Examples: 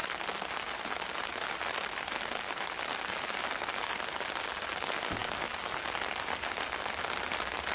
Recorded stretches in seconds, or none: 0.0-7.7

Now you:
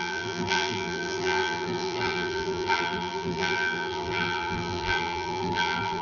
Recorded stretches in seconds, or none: none

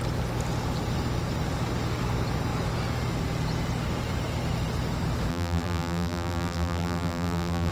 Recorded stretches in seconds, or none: 0.0-5.3